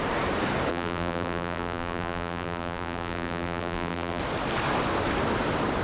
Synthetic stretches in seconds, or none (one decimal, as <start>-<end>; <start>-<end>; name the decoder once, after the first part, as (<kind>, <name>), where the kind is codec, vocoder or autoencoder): 0.7-4.2 (vocoder, BigVGAN v2)